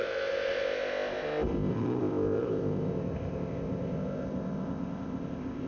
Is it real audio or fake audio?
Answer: fake